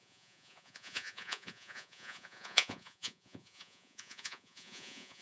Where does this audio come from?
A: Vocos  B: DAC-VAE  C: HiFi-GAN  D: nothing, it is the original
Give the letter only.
A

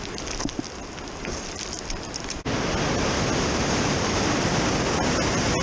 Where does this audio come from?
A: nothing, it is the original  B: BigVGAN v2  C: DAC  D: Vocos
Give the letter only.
A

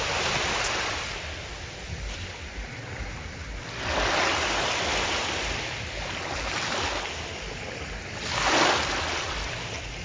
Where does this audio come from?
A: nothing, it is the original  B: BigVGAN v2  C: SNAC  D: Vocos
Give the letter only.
A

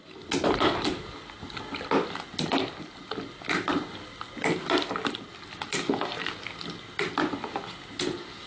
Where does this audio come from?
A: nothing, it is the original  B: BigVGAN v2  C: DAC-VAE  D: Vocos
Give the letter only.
A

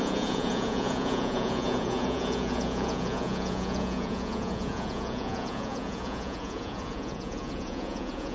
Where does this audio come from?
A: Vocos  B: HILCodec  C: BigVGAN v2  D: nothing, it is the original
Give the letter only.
A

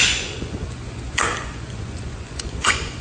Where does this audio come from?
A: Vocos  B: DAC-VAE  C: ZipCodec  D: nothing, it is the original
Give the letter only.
A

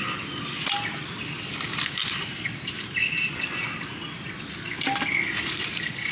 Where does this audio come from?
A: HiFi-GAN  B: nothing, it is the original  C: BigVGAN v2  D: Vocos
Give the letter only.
B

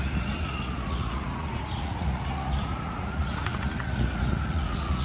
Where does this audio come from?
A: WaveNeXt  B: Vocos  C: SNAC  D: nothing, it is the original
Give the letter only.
B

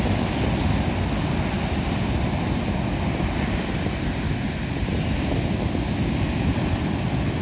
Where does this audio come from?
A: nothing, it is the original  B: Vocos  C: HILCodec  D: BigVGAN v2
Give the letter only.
A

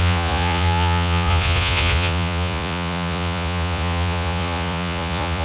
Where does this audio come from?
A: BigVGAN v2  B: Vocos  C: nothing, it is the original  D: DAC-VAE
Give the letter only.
B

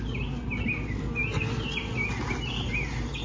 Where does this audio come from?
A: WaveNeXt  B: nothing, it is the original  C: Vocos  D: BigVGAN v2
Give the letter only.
B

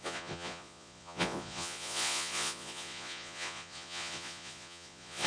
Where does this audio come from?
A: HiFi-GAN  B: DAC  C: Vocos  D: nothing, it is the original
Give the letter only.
C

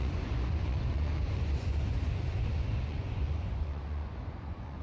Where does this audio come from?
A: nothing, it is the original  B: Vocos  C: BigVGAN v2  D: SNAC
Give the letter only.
B